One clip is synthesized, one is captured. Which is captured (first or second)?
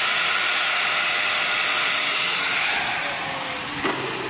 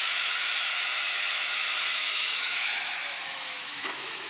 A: first